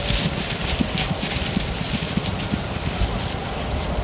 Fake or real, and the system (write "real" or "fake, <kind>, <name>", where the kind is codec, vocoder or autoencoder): real